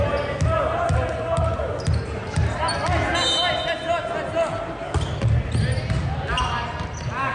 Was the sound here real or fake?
real